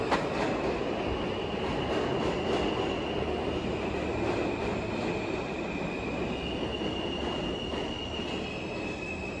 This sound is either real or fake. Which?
real